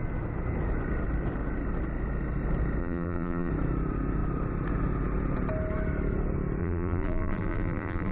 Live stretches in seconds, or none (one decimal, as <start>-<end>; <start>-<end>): 0.0-2.8; 3.5-6.6